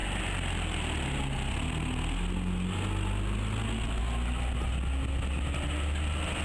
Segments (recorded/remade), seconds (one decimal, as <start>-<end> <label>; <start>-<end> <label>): 0.0-6.4 recorded